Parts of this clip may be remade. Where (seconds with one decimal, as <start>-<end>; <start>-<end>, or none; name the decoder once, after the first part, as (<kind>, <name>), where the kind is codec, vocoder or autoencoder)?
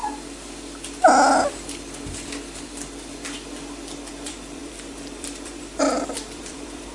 4.1-6.9 (vocoder, BigVGAN v2)